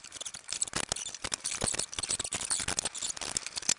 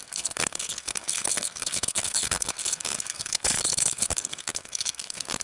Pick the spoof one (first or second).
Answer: second